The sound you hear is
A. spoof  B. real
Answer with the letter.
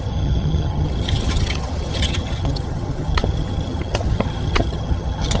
A